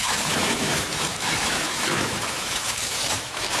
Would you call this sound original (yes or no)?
no